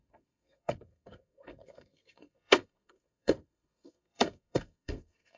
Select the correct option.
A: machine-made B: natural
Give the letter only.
A